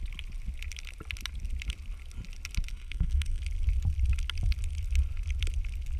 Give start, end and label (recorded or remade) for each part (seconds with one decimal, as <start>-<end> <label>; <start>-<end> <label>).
0.0-2.7 recorded; 2.7-3.4 remade; 3.4-6.0 recorded